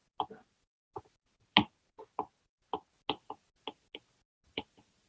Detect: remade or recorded recorded